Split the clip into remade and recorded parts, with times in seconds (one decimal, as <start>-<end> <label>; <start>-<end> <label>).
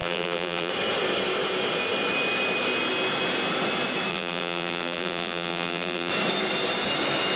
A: 0.0-0.7 remade; 0.7-4.1 recorded; 4.1-6.1 remade; 6.1-7.4 recorded